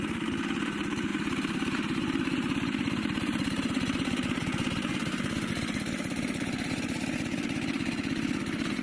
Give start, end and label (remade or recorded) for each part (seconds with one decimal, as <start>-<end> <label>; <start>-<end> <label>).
0.0-1.1 recorded; 1.1-5.5 remade; 5.5-8.8 recorded